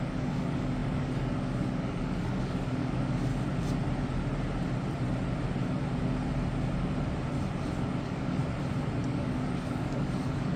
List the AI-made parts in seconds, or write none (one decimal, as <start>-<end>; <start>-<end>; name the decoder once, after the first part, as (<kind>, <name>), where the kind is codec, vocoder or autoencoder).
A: 0.0-3.3 (codec, DAC); 8.0-8.4; 9.1-10.6